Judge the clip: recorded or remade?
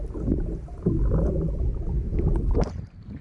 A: recorded